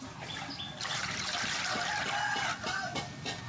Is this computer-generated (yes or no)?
no